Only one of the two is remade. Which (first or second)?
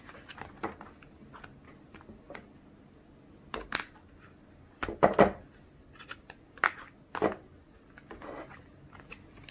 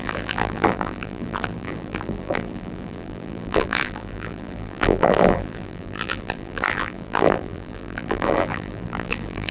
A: second